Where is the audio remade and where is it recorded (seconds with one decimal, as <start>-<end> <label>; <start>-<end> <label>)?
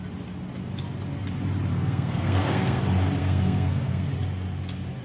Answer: 0.0-1.7 recorded; 1.7-2.8 remade; 2.8-3.2 recorded; 3.2-4.1 remade; 4.1-5.0 recorded